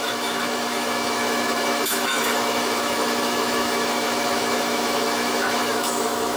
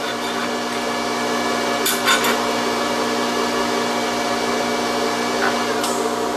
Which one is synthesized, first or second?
first